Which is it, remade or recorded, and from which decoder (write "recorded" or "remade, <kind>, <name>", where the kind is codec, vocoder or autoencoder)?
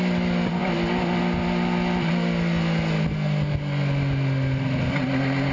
recorded